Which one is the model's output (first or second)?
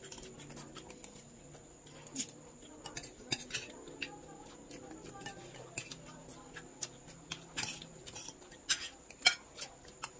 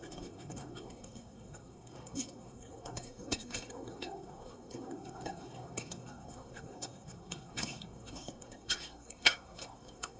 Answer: second